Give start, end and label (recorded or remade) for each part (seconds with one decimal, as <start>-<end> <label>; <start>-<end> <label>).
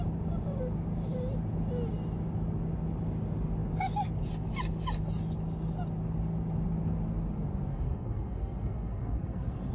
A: 0.0-7.7 recorded; 7.7-9.7 remade